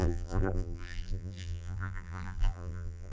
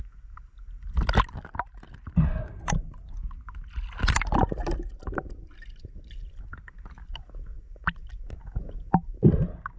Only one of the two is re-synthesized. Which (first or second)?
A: first